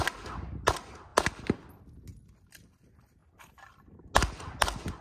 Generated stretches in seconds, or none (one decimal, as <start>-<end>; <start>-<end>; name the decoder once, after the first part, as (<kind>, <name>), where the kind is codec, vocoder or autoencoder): none